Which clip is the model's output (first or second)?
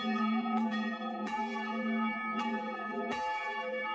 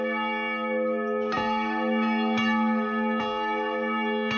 first